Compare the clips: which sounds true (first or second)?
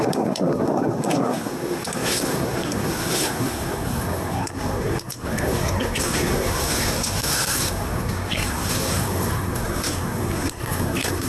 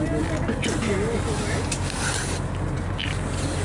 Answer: second